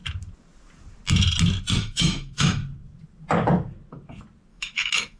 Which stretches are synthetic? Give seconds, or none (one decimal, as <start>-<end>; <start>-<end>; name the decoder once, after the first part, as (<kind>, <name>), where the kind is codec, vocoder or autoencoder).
1.8-2.6 (autoencoder, DAC-VAE); 4.5-5.2